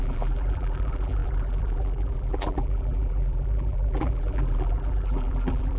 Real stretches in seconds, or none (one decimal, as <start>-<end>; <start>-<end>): none